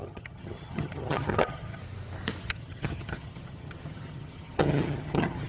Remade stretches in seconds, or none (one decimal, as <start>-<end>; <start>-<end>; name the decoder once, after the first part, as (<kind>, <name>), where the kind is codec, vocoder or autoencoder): 0.0-1.8 (vocoder, HiFi-GAN); 2.4-5.5